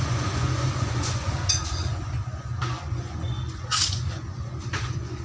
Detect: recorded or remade remade